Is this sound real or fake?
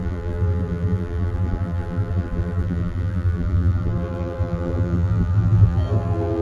fake